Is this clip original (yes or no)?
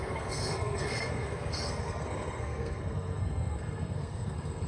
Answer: no